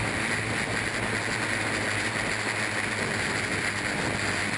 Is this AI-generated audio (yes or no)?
no